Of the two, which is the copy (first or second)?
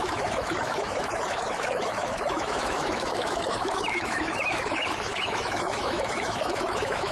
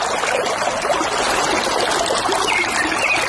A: first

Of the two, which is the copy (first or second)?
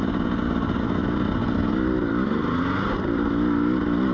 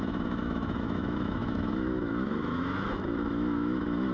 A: second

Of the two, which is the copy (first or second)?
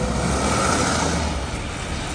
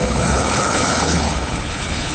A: second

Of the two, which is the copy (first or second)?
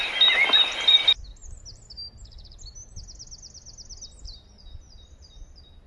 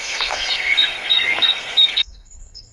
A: second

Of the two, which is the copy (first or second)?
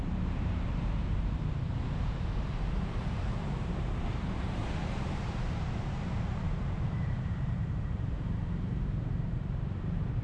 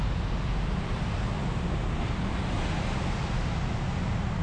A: first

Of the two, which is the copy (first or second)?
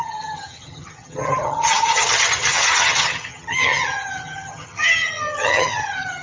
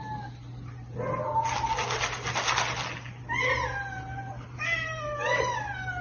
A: first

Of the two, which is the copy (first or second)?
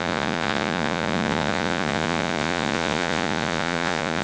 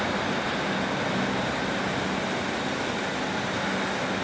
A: first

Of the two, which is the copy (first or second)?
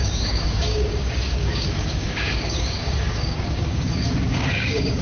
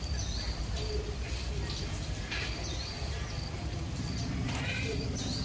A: first